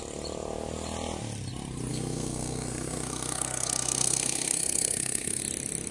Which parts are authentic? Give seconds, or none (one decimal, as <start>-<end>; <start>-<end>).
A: 0.0-1.9; 5.4-5.9